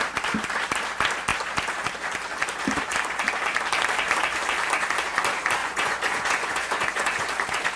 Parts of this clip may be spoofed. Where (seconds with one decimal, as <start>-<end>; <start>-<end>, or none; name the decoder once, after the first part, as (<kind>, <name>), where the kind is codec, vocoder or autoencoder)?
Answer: 5.6-7.3 (vocoder, Vocos)